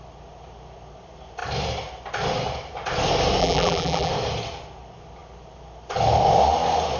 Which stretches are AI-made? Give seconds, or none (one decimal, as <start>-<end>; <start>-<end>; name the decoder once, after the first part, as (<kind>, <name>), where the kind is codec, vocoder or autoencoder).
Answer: 3.4-4.1 (vocoder, BigVGAN v2)